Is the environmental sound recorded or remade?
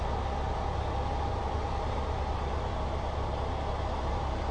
recorded